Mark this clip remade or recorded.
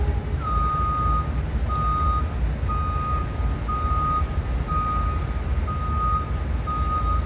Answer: recorded